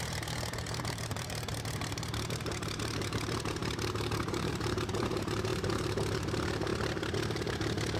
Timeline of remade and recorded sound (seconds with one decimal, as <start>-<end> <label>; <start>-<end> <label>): 0.0-6.7 remade; 6.7-7.5 recorded; 7.5-8.0 remade